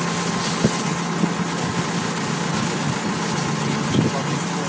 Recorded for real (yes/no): yes